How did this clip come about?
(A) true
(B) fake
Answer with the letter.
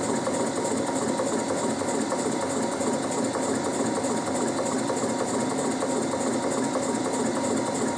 A